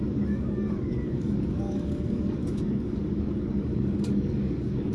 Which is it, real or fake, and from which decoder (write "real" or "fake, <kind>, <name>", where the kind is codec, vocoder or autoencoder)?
fake, codec, DAC